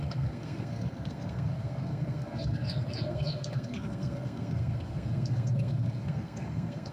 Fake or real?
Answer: fake